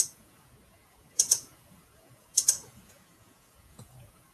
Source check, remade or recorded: remade